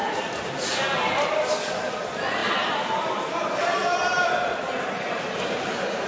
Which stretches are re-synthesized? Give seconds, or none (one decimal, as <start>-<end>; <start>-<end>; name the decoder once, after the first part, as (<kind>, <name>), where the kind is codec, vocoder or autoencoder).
0.0-6.1 (vocoder, BigVGAN v2)